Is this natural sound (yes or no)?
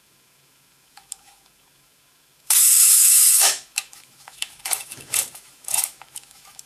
no